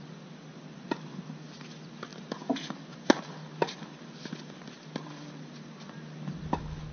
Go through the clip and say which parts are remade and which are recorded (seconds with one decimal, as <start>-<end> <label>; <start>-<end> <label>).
0.0-6.9 recorded